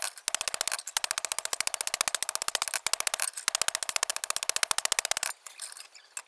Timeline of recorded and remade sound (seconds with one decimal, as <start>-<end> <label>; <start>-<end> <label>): 0.0-6.3 recorded